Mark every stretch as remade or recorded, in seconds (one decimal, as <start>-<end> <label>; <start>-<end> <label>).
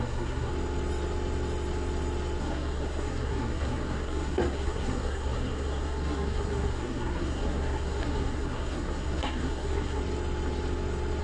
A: 0.0-0.5 remade; 0.5-2.4 recorded; 2.4-10.0 remade; 10.0-11.2 recorded